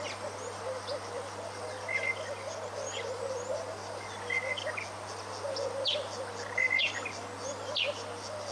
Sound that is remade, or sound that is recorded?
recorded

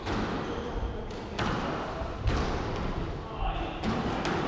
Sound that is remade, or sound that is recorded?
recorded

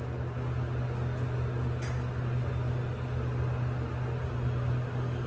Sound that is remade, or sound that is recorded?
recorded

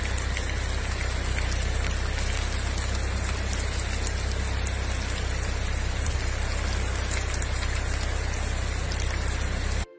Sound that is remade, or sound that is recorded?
recorded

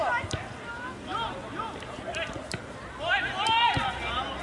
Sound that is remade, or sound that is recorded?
recorded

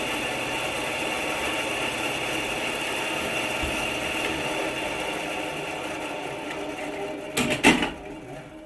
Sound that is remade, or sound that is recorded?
recorded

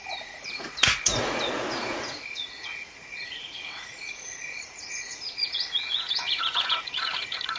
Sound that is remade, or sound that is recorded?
remade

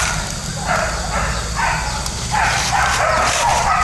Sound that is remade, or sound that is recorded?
recorded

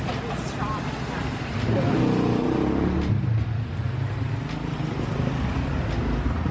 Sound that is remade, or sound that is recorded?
recorded